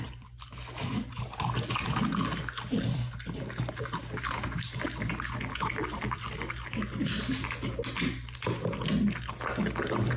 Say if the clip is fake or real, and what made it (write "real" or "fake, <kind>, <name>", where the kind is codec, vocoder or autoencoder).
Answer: real